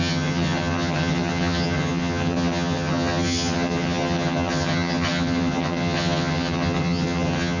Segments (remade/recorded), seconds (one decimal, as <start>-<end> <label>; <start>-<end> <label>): 0.0-7.6 remade

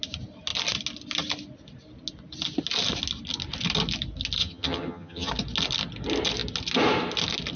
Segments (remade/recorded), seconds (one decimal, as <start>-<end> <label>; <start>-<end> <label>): 0.0-4.4 recorded; 4.4-5.3 remade; 5.3-7.6 recorded

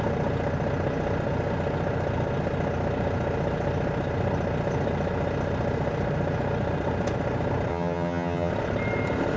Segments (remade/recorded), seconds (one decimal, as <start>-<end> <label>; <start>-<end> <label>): 0.0-7.7 recorded; 7.7-8.5 remade; 8.5-9.4 recorded

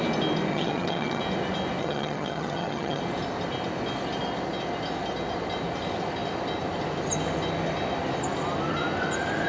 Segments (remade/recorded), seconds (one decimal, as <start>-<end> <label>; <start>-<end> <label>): 0.0-0.5 recorded; 0.5-1.2 remade; 1.2-1.8 recorded; 1.8-3.0 remade; 3.0-9.5 recorded

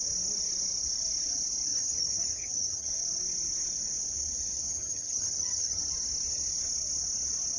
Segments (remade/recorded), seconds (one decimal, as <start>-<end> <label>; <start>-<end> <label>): 0.0-1.7 recorded; 1.7-2.9 remade; 2.9-4.7 recorded; 4.7-5.8 remade; 5.8-7.6 recorded

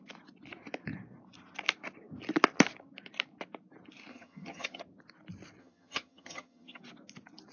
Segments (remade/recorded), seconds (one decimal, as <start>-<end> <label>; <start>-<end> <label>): 0.0-4.1 recorded; 4.1-4.8 remade; 4.8-5.6 recorded; 5.6-6.8 remade; 6.8-7.5 recorded

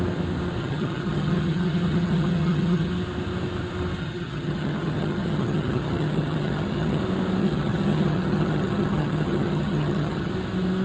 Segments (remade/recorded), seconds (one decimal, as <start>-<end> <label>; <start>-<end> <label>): 0.0-0.6 recorded; 0.6-2.9 remade; 2.9-4.0 recorded; 4.0-7.0 remade; 7.0-7.4 recorded; 7.4-10.3 remade; 10.3-10.8 recorded